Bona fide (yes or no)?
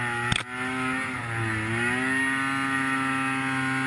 yes